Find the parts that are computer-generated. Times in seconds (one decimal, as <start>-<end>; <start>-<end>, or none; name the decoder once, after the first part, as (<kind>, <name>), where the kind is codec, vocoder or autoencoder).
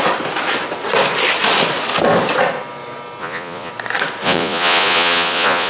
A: 3.2-3.7 (vocoder, Vocos); 4.2-5.7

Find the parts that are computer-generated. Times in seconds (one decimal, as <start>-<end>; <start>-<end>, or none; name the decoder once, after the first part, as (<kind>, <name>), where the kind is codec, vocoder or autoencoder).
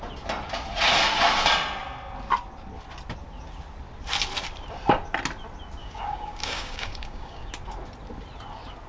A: 5.8-7.5 (codec, DAC)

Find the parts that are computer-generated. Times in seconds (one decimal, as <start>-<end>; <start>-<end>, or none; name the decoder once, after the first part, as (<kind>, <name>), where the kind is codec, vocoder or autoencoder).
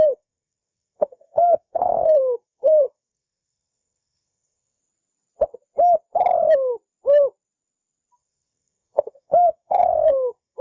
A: 0.0-4.8 (codec, SNAC); 8.1-10.6